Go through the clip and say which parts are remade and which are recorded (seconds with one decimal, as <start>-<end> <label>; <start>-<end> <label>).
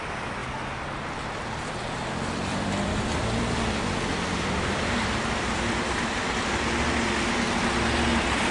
0.0-2.5 recorded; 2.5-6.8 remade; 6.8-8.5 recorded